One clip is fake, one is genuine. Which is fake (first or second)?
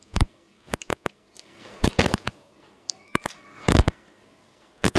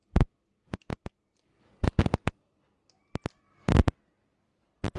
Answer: first